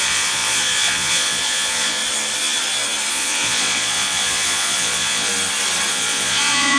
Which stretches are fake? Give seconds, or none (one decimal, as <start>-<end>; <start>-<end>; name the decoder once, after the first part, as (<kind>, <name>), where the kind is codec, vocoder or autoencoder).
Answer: 0.0-2.0 (vocoder, Vocos); 3.1-5.3; 5.9-6.8